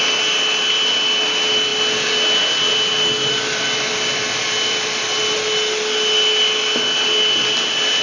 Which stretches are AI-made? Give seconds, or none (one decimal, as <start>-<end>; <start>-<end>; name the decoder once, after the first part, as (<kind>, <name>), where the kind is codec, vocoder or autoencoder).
none